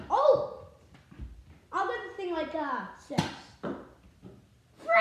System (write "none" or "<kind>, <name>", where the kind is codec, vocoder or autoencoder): none